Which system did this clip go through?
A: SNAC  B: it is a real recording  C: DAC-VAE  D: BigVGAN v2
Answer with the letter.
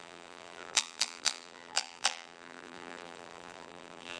D